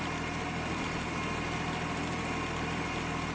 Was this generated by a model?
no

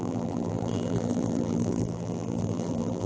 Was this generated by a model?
yes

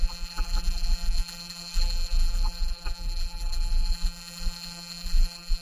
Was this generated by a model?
yes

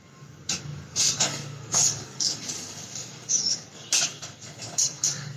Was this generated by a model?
yes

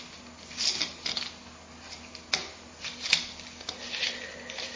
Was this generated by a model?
no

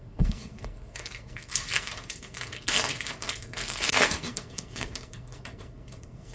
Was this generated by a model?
yes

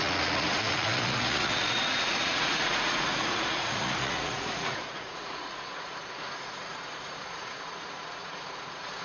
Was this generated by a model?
yes